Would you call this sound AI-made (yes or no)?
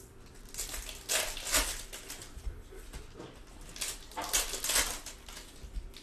no